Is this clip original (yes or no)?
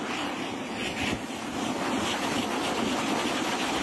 yes